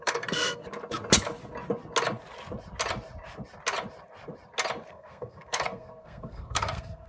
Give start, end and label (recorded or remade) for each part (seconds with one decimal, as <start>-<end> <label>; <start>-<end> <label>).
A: 0.0-0.6 remade; 0.6-4.9 recorded; 4.9-7.1 remade